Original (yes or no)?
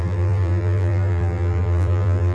no